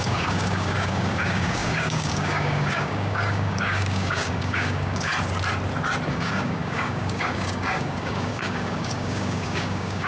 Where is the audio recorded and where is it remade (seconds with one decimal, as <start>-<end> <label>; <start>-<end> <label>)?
0.0-5.1 remade; 5.1-6.1 recorded; 6.1-10.1 remade